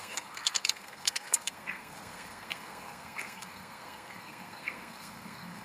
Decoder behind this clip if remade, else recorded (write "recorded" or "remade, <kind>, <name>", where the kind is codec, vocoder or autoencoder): remade, codec, SNAC